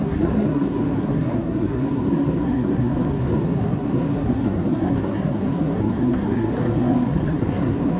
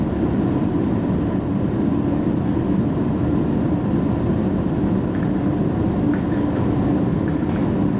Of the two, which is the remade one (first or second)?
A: first